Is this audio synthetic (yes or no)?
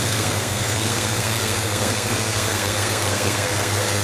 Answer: yes